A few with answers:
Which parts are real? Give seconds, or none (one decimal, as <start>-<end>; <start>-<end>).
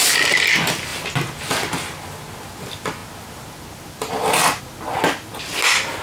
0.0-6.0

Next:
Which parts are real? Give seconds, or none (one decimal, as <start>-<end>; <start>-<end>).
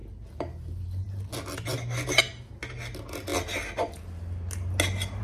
0.0-5.2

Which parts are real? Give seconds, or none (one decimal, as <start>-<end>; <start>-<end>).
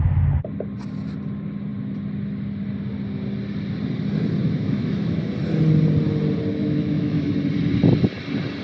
0.0-4.4; 5.3-6.5; 7.3-8.6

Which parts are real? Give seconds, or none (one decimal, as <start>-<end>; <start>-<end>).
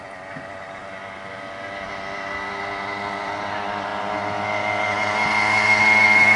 0.0-6.4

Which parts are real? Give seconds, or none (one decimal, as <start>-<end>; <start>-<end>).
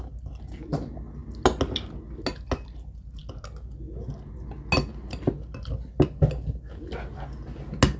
0.0-8.0